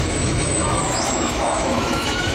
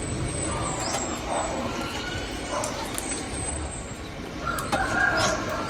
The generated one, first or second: first